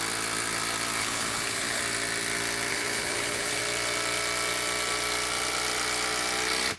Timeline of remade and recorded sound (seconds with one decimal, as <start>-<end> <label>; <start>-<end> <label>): 0.0-1.0 recorded; 1.0-1.8 remade; 1.8-2.7 recorded; 2.7-3.6 remade; 3.6-6.8 recorded